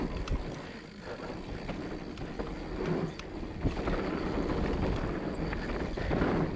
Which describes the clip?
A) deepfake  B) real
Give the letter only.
B